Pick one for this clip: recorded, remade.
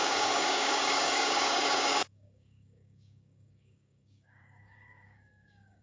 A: remade